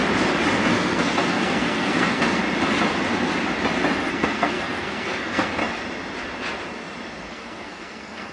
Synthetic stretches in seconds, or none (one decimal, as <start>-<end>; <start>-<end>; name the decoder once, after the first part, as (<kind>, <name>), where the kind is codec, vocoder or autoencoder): 0.6-2.4 (codec, SNAC); 4.1-5.6; 7.3-8.3